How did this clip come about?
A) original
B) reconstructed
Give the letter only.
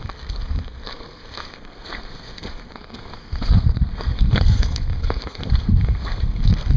B